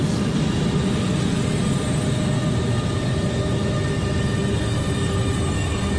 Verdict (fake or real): real